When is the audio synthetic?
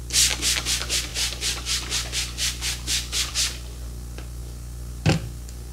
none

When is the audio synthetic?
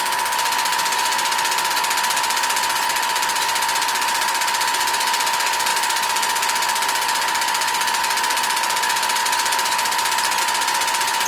none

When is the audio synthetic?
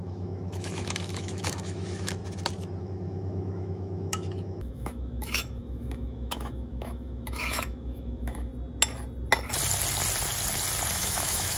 0.0-2.2 (autoencoder, DAC-VAE); 2.8-8.5; 10.9-11.6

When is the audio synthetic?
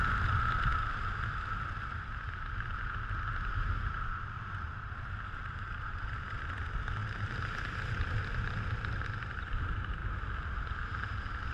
none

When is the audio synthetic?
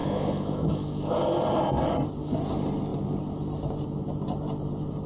0.0-1.1 (autoencoder, DAC-VAE)